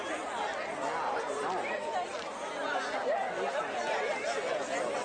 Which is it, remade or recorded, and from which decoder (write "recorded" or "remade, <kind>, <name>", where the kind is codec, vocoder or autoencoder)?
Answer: recorded